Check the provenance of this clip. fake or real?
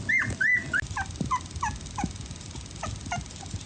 real